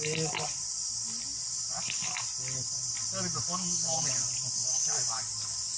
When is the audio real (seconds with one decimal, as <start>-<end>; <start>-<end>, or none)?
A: 0.0-5.8

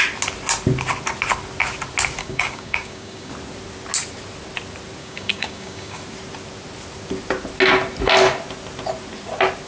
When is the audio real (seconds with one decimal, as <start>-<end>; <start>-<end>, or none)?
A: 0.0-2.2; 3.3-5.0; 6.0-9.7

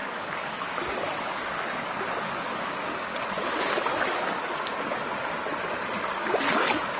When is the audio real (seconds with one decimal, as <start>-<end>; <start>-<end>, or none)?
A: 3.1-3.6; 4.7-6.1

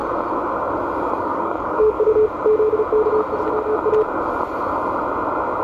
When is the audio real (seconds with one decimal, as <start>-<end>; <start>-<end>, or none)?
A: 0.0-1.1; 2.1-5.6

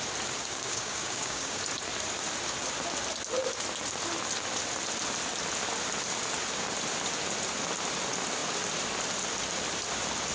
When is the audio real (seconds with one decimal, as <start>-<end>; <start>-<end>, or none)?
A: 0.0-0.4; 1.6-10.3

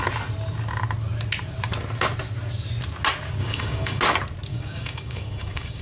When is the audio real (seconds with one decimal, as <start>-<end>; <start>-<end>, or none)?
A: 0.0-3.4; 4.0-4.5

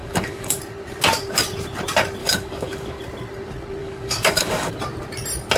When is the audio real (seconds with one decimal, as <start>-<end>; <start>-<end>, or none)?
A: 0.6-2.2; 3.0-3.8; 4.7-5.6